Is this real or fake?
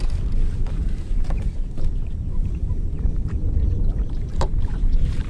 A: fake